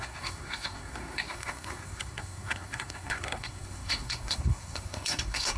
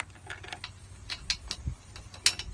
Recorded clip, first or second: second